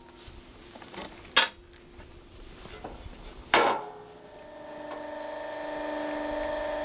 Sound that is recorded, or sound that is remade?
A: recorded